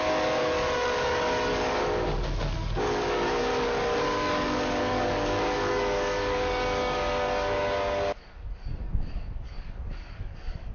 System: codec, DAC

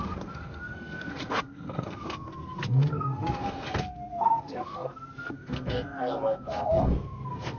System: codec, SNAC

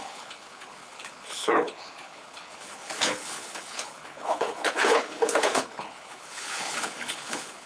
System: codec, HILCodec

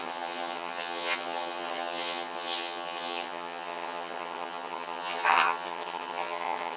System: vocoder, HiFi-GAN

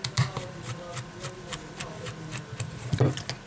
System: none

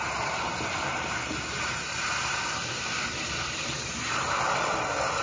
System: vocoder, BigVGAN v2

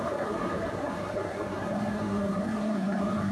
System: codec, SNAC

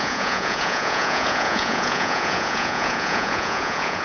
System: vocoder, Vocos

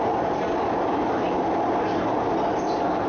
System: none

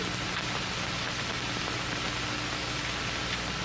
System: none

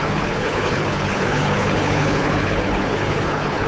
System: codec, HILCodec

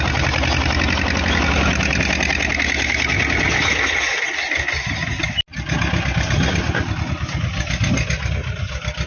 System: none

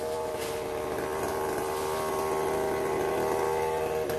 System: none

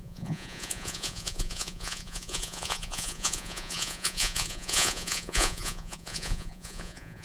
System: vocoder, Vocos